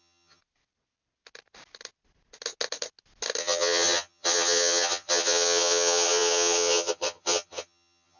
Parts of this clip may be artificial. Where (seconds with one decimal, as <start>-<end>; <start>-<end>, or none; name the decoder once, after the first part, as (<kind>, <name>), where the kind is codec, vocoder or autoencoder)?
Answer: 0.0-0.4 (vocoder, HiFi-GAN); 3.4-8.2